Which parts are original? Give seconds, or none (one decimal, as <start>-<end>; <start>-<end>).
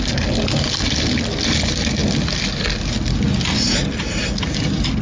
0.0-5.0